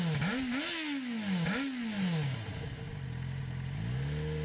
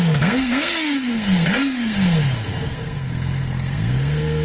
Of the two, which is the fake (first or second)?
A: second